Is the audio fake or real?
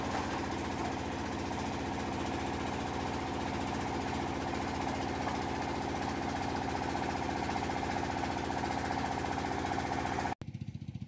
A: real